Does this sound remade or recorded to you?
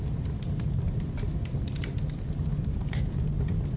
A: recorded